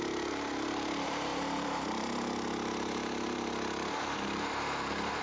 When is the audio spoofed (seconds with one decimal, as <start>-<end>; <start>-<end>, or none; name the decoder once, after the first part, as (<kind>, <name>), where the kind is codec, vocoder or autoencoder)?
0.0-5.2 (vocoder, BigVGAN v2)